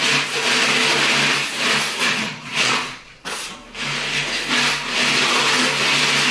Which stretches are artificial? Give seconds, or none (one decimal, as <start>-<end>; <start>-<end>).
2.0-3.6